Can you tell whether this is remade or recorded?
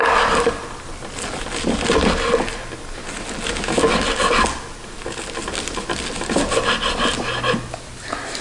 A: recorded